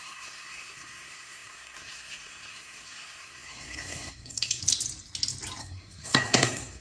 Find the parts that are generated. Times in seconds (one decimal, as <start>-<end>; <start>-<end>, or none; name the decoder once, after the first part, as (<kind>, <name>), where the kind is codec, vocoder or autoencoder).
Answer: 0.0-4.6 (codec, SNAC); 5.6-6.8